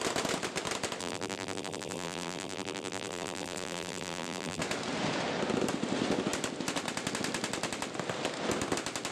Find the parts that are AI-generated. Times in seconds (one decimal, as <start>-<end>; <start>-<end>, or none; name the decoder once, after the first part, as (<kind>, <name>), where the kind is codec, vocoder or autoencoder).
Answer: 1.0-4.6 (vocoder, BigVGAN v2)